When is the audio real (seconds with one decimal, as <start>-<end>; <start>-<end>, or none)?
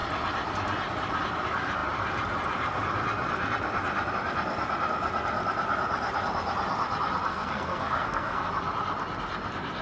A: 0.0-7.3; 8.5-9.8